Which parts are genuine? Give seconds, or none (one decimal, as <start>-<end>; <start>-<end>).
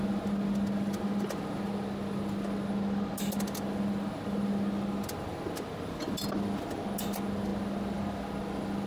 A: 0.0-8.9